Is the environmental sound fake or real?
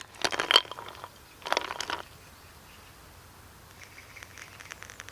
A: real